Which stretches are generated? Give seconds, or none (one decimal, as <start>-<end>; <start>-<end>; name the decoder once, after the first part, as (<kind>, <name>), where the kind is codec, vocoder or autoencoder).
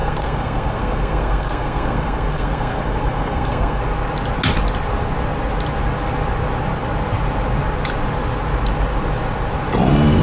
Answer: 0.0-3.8 (codec, SNAC)